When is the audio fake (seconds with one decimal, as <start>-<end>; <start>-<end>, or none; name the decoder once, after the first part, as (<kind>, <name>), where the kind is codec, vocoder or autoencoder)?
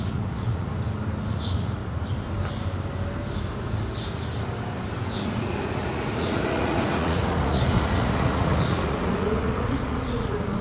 0.0-0.7 (vocoder, Vocos); 1.3-1.8; 5.0-10.6